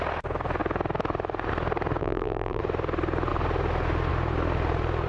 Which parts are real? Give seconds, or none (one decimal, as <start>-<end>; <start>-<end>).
0.0-2.0; 2.6-5.1